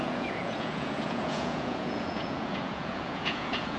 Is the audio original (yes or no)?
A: no